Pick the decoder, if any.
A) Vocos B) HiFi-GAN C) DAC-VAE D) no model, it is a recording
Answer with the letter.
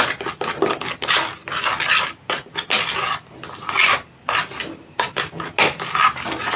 D